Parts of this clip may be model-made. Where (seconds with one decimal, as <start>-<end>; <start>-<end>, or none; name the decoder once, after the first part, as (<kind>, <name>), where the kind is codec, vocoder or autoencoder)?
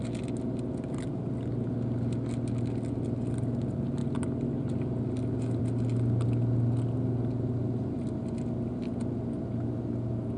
none